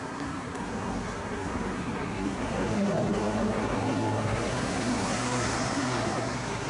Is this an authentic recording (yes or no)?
no